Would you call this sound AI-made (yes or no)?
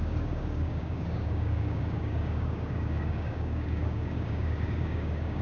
yes